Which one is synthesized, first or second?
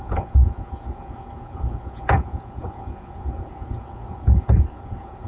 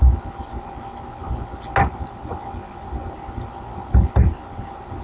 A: first